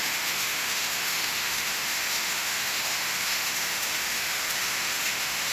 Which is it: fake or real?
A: fake